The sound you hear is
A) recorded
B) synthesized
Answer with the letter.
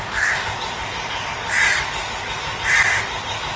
A